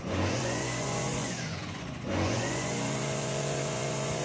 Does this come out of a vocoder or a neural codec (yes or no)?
yes